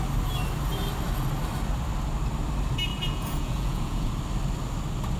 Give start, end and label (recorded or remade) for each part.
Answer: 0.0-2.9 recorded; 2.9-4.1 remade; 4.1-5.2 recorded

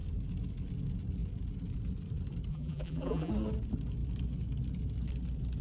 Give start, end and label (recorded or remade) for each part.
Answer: 0.0-2.5 recorded; 2.5-3.3 remade; 3.3-5.6 recorded

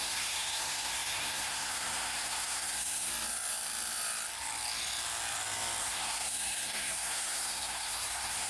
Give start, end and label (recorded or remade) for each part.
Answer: 0.0-3.1 remade; 3.1-5.8 recorded; 5.8-8.5 remade